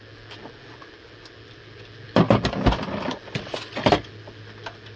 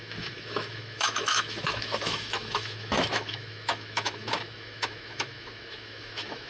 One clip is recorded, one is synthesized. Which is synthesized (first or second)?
second